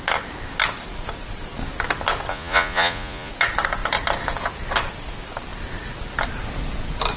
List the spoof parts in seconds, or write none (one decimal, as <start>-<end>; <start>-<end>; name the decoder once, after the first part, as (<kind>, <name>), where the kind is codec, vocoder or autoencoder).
2.3-3.3 (vocoder, Vocos)